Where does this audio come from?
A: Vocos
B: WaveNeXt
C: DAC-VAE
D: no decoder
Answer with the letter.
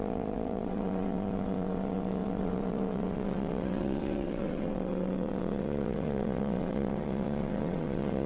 B